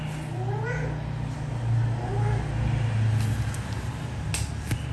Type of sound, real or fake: real